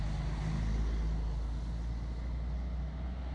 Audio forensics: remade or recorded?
recorded